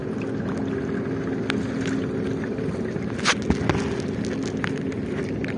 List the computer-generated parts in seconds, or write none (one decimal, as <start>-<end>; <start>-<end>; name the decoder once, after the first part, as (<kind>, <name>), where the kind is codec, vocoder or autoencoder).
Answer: none